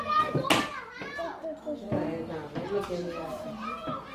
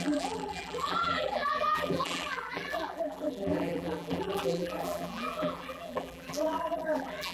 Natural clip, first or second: first